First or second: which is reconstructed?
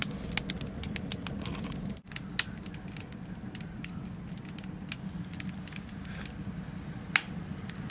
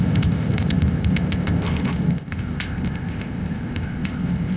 second